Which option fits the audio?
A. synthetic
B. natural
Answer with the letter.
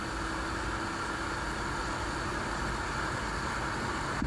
B